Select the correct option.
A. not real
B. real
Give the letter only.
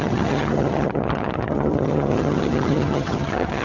A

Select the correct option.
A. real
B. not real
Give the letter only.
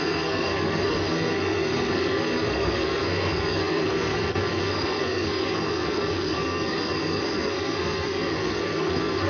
B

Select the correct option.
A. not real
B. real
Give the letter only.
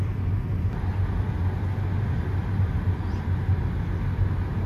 B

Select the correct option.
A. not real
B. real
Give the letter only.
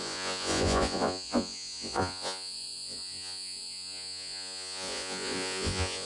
A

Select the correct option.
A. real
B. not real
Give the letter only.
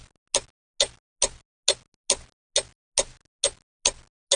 A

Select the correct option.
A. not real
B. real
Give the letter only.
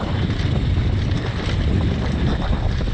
B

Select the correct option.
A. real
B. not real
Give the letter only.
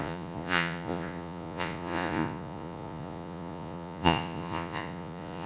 B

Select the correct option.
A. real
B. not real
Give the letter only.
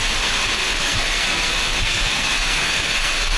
B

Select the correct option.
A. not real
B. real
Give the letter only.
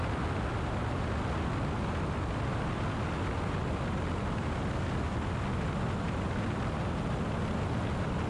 B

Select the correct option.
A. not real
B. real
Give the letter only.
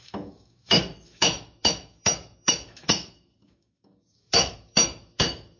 A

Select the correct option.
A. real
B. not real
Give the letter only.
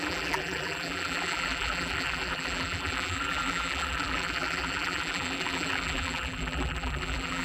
B